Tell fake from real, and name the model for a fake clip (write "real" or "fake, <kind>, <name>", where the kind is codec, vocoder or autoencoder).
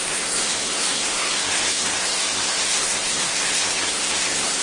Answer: fake, codec, SNAC